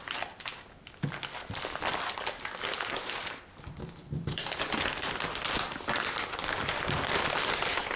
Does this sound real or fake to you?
real